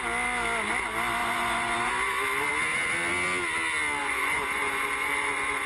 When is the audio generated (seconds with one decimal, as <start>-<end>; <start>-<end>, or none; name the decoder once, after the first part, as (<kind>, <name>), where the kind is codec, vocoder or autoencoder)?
1.2-1.9 (vocoder, Vocos); 4.0-5.7